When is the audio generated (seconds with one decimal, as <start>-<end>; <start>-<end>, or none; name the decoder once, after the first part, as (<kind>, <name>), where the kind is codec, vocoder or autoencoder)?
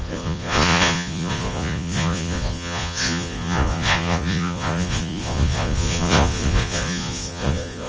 0.0-7.9 (vocoder, Vocos)